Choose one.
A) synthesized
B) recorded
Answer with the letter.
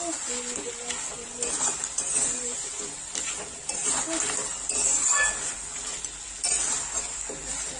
B